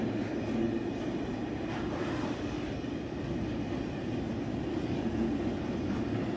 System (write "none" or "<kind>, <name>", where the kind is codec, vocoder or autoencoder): none